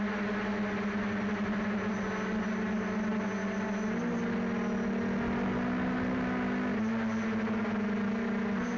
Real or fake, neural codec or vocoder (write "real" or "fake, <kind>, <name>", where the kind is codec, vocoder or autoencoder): real